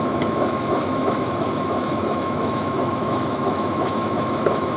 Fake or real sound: fake